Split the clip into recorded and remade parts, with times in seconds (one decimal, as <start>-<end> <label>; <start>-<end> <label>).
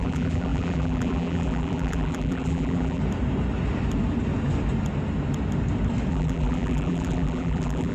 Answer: 0.0-3.0 remade; 3.0-6.1 recorded; 6.1-7.9 remade